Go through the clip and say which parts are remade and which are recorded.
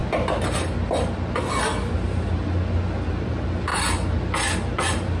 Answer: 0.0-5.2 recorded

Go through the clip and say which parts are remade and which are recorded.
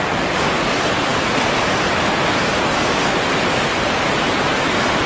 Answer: 0.0-5.1 recorded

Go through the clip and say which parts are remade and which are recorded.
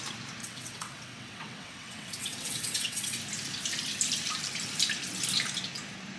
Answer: 0.0-0.4 recorded; 0.4-3.2 remade; 3.2-6.2 recorded